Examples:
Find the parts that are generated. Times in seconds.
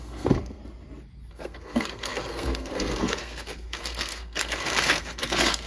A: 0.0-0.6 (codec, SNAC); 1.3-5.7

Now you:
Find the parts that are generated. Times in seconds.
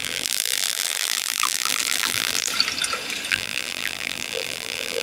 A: 0.0-2.5 (vocoder, BigVGAN v2); 3.3-5.0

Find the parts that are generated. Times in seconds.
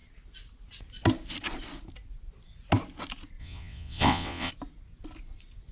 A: 3.4-4.5 (vocoder, WaveNeXt)